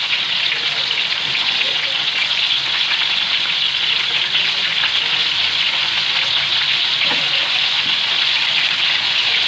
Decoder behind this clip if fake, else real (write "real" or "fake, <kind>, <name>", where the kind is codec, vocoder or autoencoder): fake, vocoder, Vocos